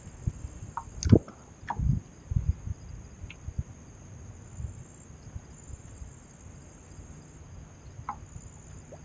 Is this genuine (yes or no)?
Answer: yes